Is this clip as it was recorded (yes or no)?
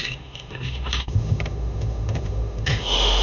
no